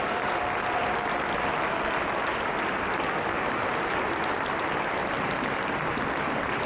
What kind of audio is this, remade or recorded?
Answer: recorded